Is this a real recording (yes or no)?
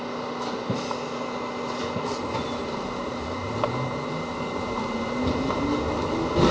yes